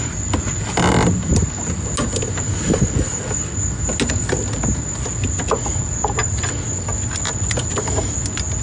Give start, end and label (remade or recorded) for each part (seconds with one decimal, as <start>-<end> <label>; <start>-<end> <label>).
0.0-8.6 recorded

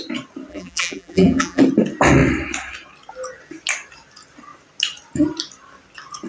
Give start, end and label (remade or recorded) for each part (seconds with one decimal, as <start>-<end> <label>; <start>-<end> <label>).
0.0-0.5 recorded; 0.5-1.6 remade; 1.6-6.3 recorded

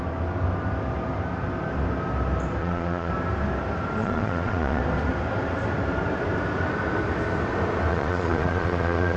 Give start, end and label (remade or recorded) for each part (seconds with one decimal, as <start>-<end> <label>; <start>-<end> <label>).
0.0-2.6 recorded; 2.6-3.1 remade; 3.1-4.0 recorded; 4.0-4.8 remade; 4.8-7.9 recorded; 7.9-9.2 remade

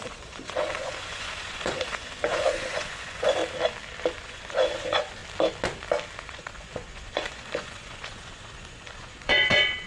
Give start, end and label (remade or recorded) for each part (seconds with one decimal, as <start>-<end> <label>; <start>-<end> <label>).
0.0-3.4 remade; 3.4-4.1 recorded; 4.1-5.2 remade; 5.2-6.2 recorded; 6.2-9.9 remade